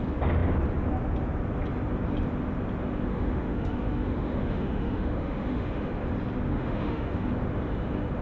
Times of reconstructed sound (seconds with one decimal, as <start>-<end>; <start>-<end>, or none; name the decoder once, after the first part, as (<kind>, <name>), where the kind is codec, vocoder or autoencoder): 3.1-5.9 (autoencoder, DAC-VAE); 6.5-7.3